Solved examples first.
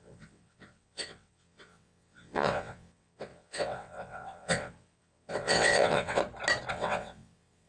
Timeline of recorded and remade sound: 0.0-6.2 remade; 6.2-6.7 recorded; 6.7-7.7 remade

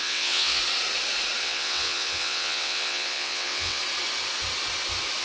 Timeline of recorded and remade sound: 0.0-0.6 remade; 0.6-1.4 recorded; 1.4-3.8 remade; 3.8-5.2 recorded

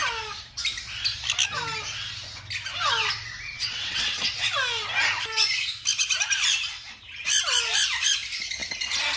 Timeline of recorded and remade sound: 0.0-3.5 recorded; 3.5-4.5 remade; 4.5-9.2 recorded